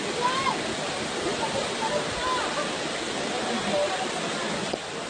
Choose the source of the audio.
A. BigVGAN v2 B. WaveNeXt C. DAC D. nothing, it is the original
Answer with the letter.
D